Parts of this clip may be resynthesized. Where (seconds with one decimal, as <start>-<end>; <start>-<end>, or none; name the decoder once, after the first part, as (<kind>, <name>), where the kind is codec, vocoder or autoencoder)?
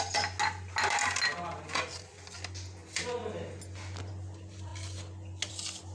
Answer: none